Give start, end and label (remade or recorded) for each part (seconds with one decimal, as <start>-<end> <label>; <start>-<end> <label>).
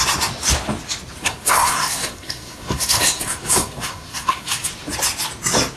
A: 0.0-1.2 recorded; 1.2-4.7 remade; 4.7-5.8 recorded